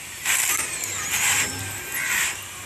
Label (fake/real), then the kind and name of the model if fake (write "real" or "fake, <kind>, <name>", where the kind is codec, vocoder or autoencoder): real